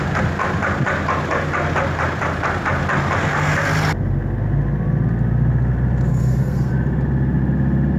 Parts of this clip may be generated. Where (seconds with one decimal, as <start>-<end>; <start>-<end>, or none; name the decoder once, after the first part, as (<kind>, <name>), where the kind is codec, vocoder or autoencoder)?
6.1-6.7 (codec, SNAC)